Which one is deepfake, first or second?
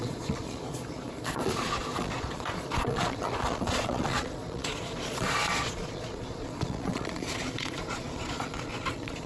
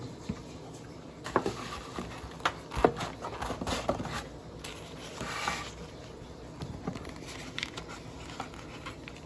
first